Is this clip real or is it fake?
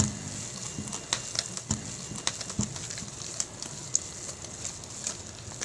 real